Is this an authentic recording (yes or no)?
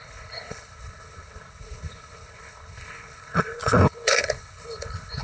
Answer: no